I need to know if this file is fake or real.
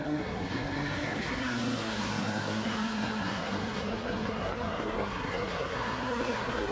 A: fake